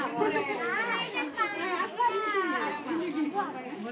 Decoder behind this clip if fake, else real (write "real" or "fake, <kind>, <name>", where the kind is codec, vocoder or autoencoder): real